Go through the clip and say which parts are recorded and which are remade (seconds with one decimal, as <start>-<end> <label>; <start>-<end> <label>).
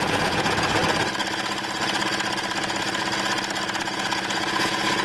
0.0-0.8 remade; 0.8-3.8 recorded; 3.8-5.0 remade